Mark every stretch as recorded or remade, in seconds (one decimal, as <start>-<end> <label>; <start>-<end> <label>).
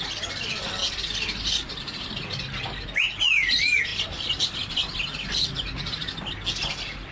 0.0-7.1 recorded